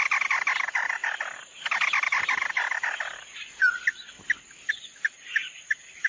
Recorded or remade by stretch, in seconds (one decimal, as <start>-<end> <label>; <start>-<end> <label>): 0.0-6.1 recorded